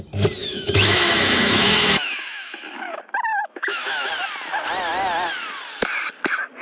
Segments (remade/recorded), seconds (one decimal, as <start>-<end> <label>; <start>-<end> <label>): 0.0-0.4 recorded; 0.4-3.0 remade; 3.0-3.4 recorded; 3.4-4.1 remade; 4.1-6.6 recorded